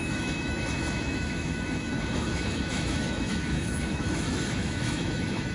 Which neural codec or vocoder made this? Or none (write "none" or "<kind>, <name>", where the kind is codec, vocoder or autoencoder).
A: autoencoder, DAC-VAE